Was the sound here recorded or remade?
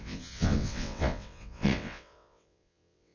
remade